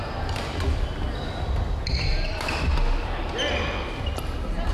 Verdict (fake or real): real